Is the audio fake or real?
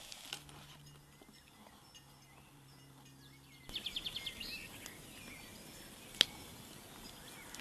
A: real